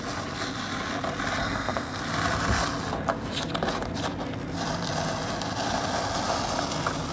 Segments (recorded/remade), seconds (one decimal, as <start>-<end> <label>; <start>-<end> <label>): 0.0-1.4 recorded; 1.4-2.0 remade; 2.0-7.1 recorded